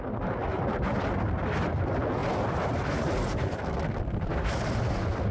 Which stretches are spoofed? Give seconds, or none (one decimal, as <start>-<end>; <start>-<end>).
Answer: none